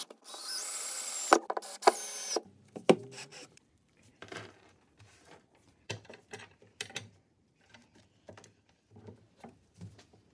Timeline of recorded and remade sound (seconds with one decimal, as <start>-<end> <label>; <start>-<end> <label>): 0.0-3.3 recorded; 3.3-7.7 remade; 7.7-10.3 recorded